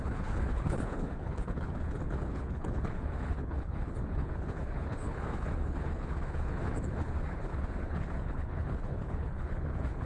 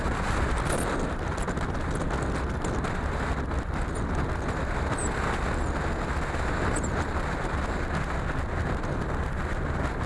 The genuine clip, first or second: second